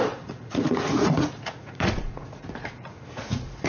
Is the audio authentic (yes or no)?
no